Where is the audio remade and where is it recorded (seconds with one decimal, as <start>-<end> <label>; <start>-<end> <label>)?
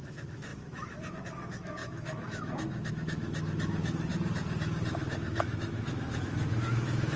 0.0-4.1 remade; 4.1-4.9 recorded; 4.9-7.2 remade